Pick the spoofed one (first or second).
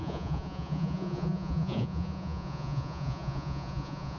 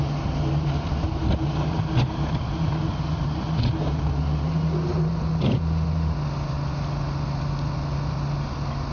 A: first